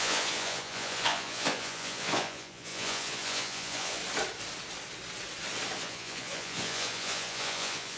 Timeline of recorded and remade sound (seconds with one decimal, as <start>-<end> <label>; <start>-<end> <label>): 0.0-4.0 remade; 4.0-5.8 recorded; 5.8-8.0 remade

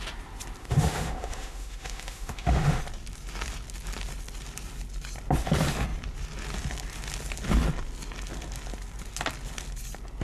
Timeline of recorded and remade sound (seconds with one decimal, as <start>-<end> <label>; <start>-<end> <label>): 0.0-0.6 recorded; 0.6-2.8 remade; 2.8-10.2 recorded

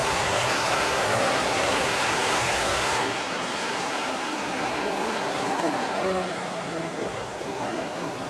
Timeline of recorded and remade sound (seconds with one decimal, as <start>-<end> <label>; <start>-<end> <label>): 0.0-8.3 remade

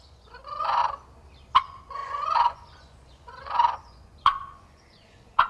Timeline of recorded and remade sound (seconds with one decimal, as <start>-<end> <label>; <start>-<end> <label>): 0.0-0.8 remade; 0.8-1.6 recorded; 1.6-5.5 remade